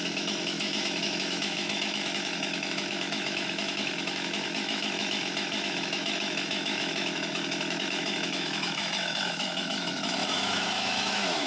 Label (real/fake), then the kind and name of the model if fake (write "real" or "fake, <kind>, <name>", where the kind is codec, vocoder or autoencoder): fake, autoencoder, DAC-VAE